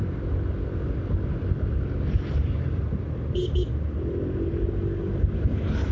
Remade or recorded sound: recorded